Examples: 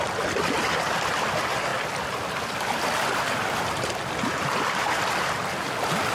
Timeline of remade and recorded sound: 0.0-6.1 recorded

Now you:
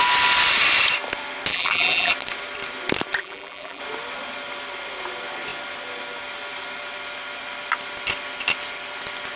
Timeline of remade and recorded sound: 0.0-1.5 recorded; 1.5-2.1 remade; 2.1-3.2 recorded; 3.2-3.8 remade; 3.8-9.4 recorded

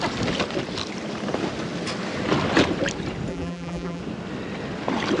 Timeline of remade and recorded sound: 0.0-3.3 recorded; 3.3-4.0 remade; 4.0-5.2 recorded

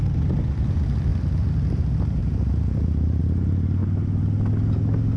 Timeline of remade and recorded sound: 0.0-2.2 recorded; 2.2-3.2 remade; 3.2-5.2 recorded

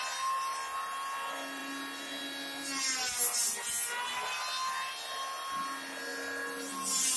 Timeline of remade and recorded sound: 0.0-7.2 recorded

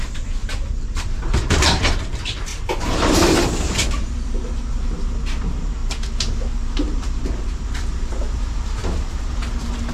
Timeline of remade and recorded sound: 0.0-2.5 remade; 2.5-3.7 recorded; 3.7-5.8 remade; 5.8-6.7 recorded; 6.7-9.9 remade